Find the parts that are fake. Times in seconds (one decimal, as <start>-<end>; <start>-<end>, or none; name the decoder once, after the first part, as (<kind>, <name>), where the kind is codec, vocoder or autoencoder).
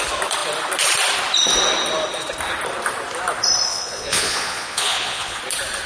3.7-5.4 (vocoder, Vocos)